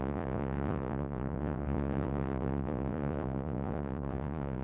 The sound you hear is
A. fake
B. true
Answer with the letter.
A